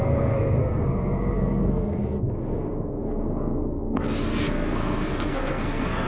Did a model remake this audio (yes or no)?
yes